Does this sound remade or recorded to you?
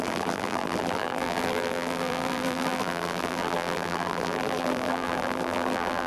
remade